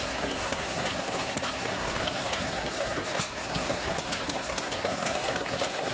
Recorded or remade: remade